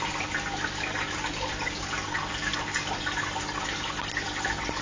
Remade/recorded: recorded